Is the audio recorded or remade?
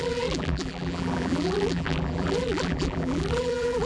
remade